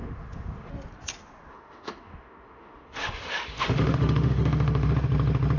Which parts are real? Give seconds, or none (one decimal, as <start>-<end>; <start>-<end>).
0.7-1.5; 4.9-5.6